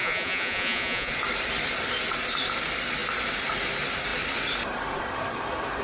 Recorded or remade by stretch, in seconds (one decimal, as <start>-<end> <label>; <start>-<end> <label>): 0.0-1.1 remade; 1.1-5.8 recorded